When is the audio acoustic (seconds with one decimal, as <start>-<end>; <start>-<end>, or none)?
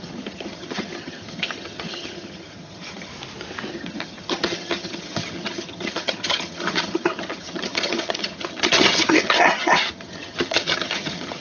3.1-3.7